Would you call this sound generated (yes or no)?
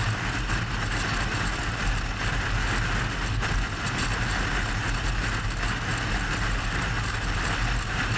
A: no